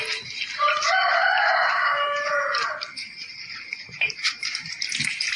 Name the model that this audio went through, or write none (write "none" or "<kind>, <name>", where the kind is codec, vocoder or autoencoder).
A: vocoder, BigVGAN v2